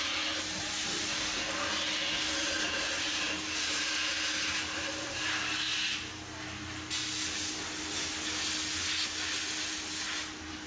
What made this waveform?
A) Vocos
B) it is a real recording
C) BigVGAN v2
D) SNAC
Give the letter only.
B